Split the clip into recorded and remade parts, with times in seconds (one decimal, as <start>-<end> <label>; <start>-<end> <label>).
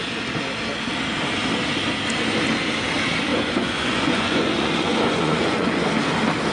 0.0-3.3 recorded; 3.3-5.7 remade; 5.7-6.5 recorded